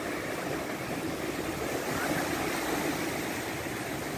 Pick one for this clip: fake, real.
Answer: real